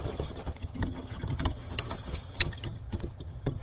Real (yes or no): no